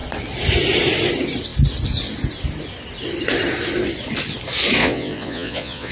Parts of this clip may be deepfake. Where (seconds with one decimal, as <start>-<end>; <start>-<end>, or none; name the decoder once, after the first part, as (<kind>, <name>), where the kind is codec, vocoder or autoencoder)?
4.8-5.9 (vocoder, Vocos)